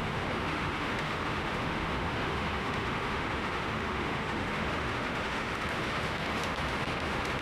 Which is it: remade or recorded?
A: remade